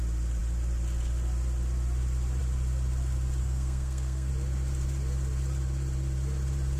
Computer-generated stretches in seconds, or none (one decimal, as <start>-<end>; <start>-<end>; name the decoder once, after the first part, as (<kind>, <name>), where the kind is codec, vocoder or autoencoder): 3.4-4.3 (codec, SNAC)